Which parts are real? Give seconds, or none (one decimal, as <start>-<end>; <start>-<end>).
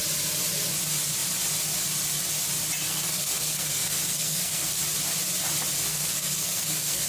0.0-2.9; 4.8-5.9